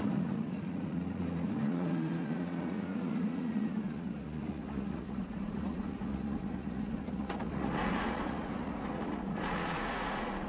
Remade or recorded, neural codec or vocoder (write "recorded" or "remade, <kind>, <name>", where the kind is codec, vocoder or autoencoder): remade, vocoder, Vocos